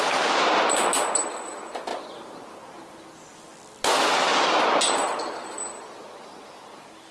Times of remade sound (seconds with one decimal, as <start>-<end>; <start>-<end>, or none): none